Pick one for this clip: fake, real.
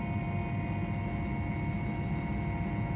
real